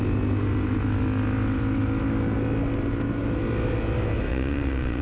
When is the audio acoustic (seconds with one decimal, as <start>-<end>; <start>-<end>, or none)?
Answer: 0.0-4.3